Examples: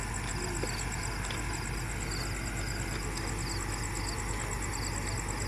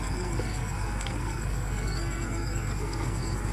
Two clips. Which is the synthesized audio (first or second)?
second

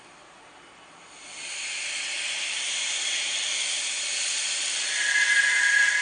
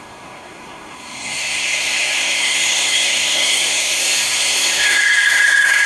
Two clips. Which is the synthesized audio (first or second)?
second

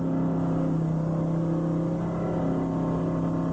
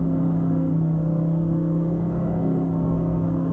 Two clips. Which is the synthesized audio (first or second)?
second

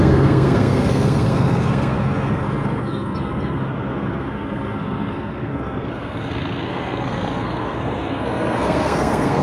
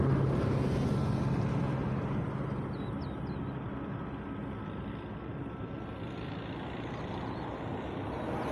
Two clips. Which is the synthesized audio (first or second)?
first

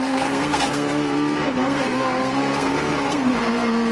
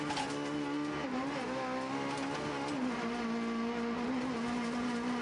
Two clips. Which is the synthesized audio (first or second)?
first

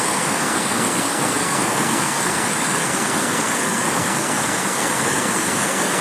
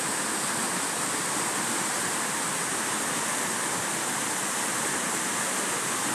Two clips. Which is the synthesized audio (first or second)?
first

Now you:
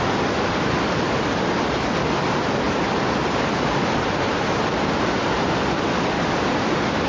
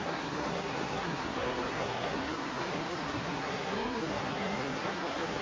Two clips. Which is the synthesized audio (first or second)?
second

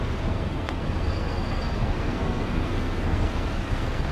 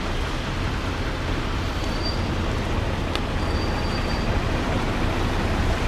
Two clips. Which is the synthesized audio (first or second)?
first